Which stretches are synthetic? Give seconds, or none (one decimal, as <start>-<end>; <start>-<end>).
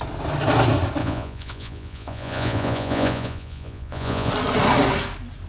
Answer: 1.0-4.3